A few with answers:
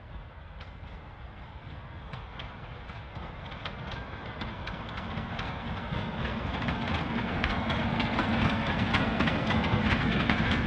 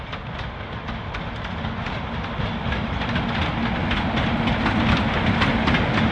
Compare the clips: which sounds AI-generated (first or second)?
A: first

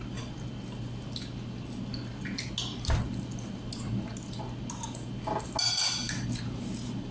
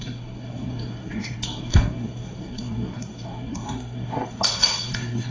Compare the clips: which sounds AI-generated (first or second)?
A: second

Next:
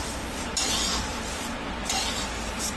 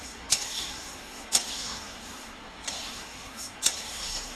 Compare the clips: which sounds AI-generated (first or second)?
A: second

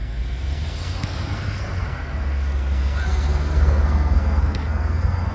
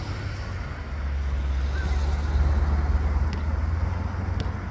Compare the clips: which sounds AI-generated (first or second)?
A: first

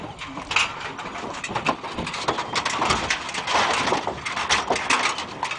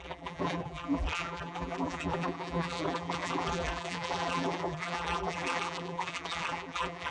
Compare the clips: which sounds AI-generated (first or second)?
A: second